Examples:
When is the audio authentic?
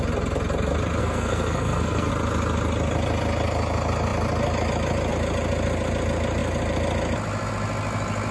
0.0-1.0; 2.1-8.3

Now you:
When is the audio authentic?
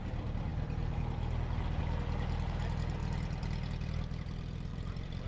0.0-4.7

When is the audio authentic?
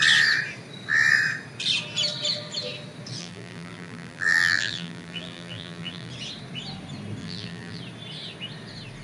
0.0-3.2; 6.1-7.2; 7.8-9.0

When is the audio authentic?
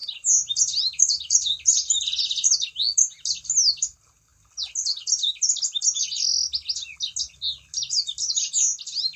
0.0-9.2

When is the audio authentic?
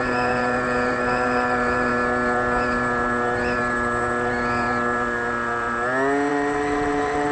1.9-6.3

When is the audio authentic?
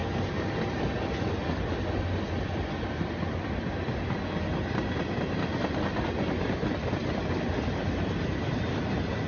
0.0-9.3